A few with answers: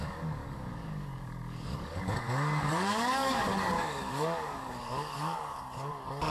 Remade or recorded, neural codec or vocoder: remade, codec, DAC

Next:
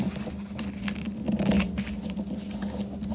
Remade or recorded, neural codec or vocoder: recorded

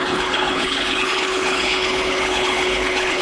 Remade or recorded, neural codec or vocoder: remade, codec, HILCodec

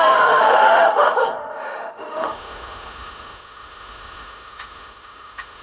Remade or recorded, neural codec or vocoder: remade, autoencoder, DAC-VAE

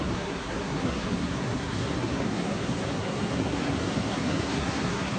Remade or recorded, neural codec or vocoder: remade, codec, SNAC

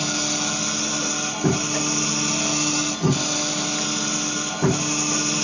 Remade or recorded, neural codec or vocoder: recorded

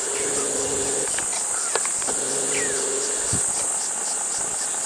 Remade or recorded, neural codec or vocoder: recorded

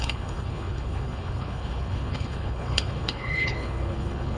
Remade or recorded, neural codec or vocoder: remade, codec, HILCodec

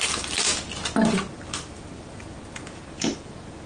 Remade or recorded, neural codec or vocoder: recorded